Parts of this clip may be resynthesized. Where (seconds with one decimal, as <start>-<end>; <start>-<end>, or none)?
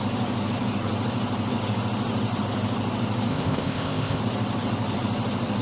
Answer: 3.3-4.2